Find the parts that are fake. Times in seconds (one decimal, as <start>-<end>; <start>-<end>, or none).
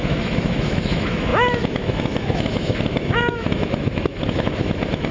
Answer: 0.0-5.1